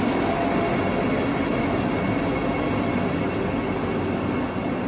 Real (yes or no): yes